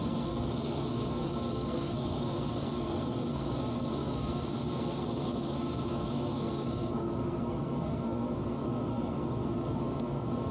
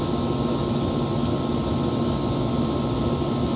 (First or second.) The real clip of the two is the second